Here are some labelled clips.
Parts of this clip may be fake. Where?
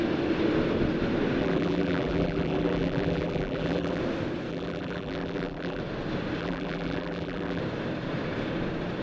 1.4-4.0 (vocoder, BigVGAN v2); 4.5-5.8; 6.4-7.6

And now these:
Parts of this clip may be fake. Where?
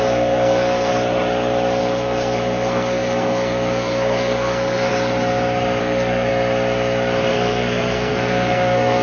0.0-0.9 (codec, SNAC); 1.8-4.9; 5.8-6.3; 7.3-9.0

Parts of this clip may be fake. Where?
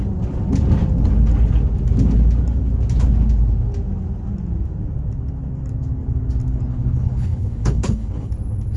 6.7-8.3 (codec, HILCodec)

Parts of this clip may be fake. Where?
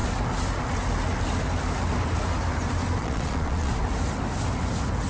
3.0-3.7 (vocoder, Vocos)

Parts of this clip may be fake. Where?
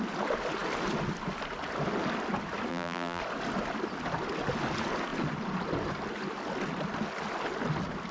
2.7-3.2 (vocoder, BigVGAN v2)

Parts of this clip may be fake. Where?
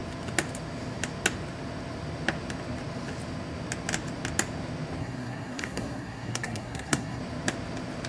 5.0-7.2 (codec, SNAC)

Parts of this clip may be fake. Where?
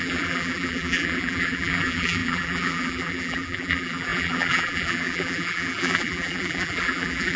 0.0-7.4 (vocoder, BigVGAN v2)